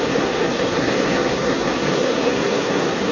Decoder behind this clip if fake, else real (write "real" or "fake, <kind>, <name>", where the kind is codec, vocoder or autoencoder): fake, codec, SNAC